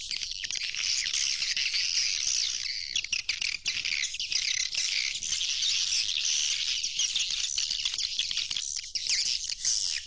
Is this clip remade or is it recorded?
recorded